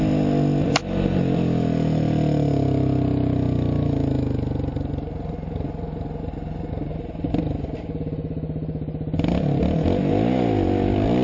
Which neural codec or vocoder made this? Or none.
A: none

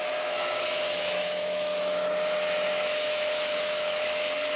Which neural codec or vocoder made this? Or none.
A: autoencoder, DAC-VAE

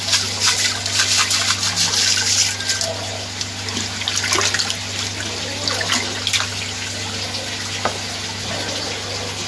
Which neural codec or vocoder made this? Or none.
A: none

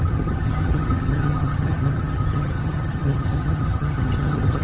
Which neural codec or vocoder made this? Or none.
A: vocoder, HiFi-GAN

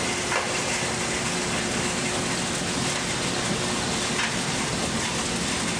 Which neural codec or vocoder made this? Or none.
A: none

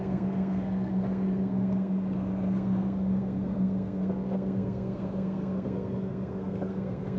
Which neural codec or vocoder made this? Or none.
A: codec, SNAC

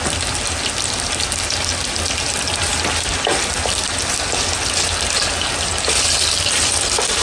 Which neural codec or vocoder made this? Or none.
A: none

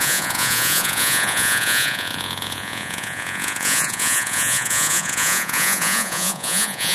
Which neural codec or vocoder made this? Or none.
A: vocoder, Vocos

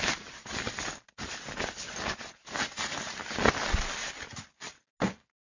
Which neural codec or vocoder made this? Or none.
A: none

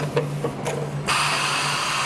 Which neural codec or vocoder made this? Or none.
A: none